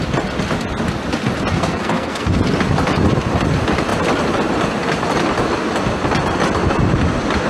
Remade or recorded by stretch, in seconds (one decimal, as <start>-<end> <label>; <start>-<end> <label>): 0.0-1.5 recorded; 1.5-2.4 remade; 2.4-7.5 recorded